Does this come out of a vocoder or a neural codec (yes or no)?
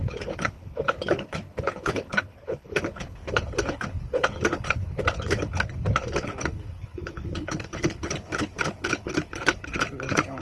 yes